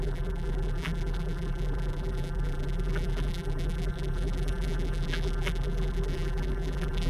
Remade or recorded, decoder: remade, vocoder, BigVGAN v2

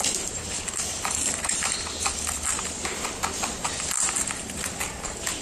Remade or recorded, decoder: remade, vocoder, BigVGAN v2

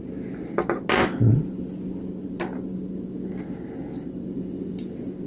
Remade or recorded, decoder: recorded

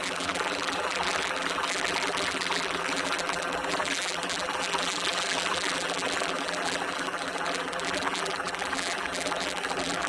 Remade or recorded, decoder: remade, vocoder, BigVGAN v2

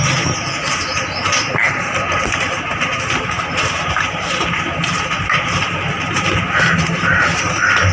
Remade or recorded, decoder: remade, vocoder, BigVGAN v2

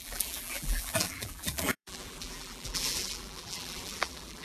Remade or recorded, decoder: remade, vocoder, BigVGAN v2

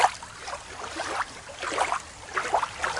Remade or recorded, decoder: recorded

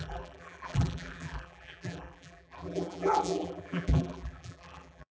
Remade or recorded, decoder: remade, vocoder, BigVGAN v2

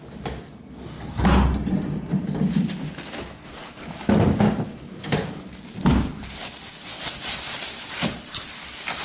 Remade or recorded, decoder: recorded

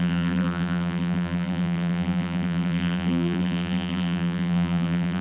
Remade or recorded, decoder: remade, vocoder, BigVGAN v2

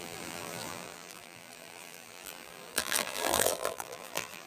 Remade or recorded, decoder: remade, vocoder, BigVGAN v2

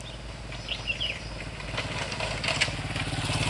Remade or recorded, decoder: recorded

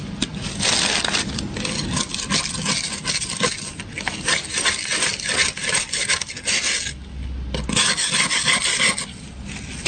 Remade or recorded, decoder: recorded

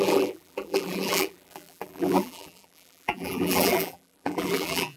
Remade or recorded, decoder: remade, vocoder, BigVGAN v2